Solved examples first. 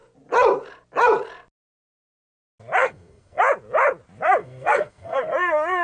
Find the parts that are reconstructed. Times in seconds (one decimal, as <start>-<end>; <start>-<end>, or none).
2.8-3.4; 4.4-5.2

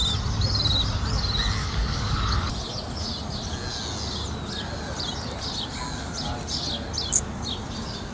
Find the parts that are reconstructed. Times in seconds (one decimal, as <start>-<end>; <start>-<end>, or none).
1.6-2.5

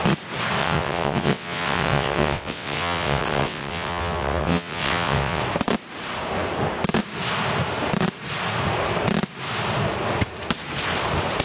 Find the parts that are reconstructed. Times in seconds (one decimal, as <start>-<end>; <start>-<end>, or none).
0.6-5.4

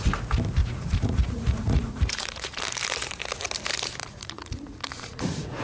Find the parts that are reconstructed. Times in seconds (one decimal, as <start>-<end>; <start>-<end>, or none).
0.6-2.6; 4.0-5.6